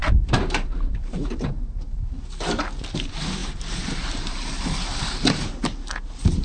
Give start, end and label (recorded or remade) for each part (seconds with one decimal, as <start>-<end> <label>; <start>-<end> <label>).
0.0-2.2 remade; 2.2-3.4 recorded; 3.4-5.5 remade; 5.5-6.4 recorded